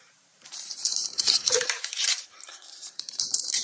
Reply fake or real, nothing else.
fake